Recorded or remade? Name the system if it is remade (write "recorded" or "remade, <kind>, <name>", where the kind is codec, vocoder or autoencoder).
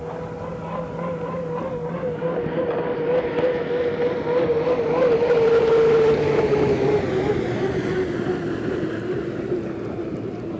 recorded